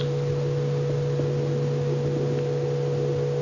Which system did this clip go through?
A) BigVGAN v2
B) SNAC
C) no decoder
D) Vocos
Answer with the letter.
C